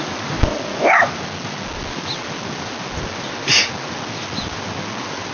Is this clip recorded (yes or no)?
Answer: yes